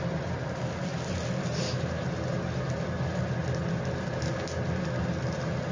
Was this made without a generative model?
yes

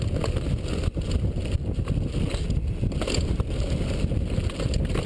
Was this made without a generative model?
yes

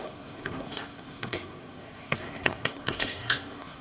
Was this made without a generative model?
no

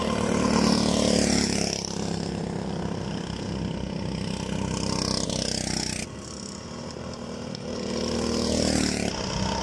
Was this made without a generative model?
yes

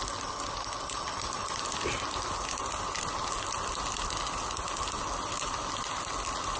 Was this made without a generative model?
yes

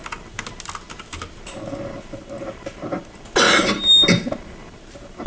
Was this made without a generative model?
yes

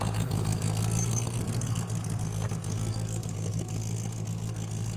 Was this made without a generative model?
no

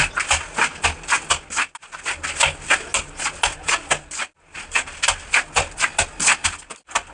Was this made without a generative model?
yes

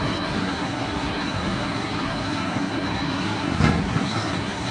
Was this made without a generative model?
no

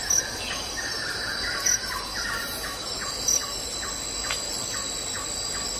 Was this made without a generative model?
yes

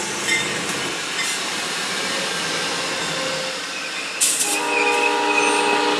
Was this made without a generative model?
yes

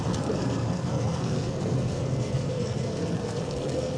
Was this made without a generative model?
no